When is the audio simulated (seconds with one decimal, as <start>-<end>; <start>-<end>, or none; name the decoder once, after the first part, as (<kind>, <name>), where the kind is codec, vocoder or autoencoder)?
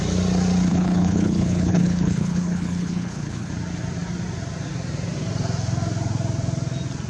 0.7-3.5 (codec, HILCodec)